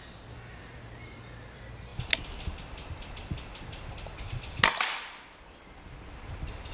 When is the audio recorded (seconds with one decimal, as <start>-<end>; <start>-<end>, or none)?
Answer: 0.0-6.7